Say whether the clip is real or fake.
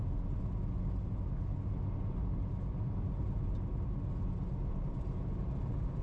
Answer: real